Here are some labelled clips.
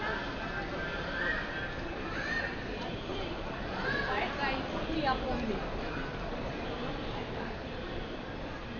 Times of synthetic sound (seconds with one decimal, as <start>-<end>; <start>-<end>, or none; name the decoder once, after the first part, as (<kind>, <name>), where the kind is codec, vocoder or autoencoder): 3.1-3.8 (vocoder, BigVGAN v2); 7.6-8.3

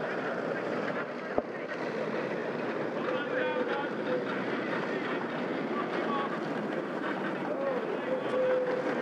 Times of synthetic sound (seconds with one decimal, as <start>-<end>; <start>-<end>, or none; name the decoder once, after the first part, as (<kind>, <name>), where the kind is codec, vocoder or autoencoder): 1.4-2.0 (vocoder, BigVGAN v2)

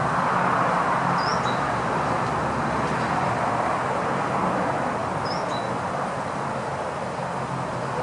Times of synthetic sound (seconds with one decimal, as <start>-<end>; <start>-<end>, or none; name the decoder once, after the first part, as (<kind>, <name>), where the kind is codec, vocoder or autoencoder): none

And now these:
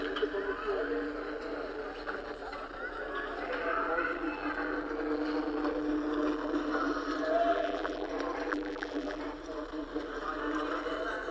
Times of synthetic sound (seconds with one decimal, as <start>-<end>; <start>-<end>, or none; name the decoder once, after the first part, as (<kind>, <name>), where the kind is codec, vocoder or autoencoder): 7.5-8.1 (vocoder, BigVGAN v2); 8.5-9.2

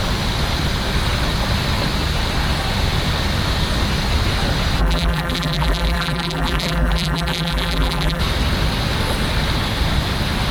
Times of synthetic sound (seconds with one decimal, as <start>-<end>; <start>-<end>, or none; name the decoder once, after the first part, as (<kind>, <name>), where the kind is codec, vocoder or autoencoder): 4.8-8.2 (vocoder, BigVGAN v2)

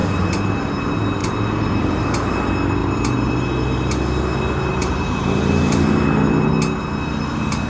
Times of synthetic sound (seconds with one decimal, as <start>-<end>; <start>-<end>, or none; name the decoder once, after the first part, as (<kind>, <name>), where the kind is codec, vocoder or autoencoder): 0.0-0.7 (vocoder, BigVGAN v2); 1.2-2.3; 2.8-3.3; 4.7-6.5